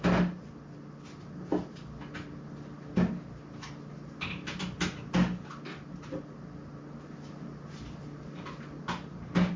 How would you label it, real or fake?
real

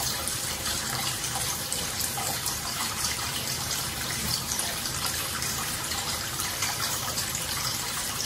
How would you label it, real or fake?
fake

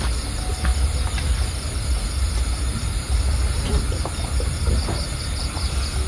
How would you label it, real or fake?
real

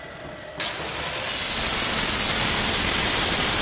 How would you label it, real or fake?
real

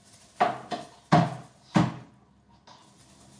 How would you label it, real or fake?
real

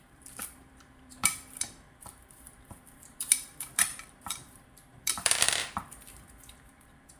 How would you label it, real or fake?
fake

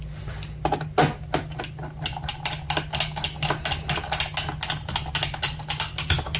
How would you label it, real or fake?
real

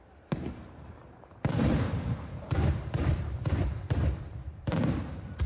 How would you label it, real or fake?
fake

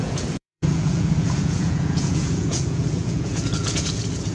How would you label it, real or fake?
fake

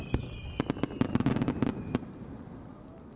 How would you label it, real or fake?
real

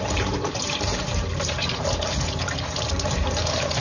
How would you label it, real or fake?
fake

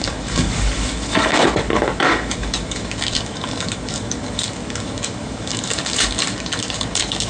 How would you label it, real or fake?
fake